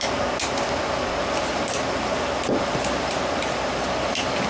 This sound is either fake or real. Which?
real